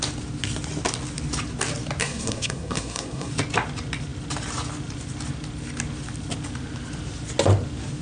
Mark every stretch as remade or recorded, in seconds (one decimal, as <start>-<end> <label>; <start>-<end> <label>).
0.0-2.0 recorded; 2.0-3.3 remade; 3.3-8.0 recorded